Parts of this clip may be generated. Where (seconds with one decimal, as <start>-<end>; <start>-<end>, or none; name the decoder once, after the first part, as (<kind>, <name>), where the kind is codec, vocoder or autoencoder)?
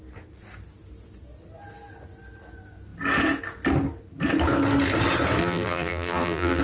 5.4-6.6 (vocoder, BigVGAN v2)